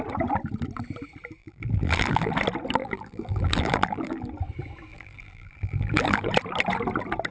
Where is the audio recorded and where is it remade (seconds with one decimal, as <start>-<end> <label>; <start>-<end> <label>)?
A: 0.0-1.4 recorded; 1.4-2.3 remade; 2.3-2.8 recorded; 2.8-4.3 remade; 4.3-4.9 recorded; 4.9-6.3 remade; 6.3-7.3 recorded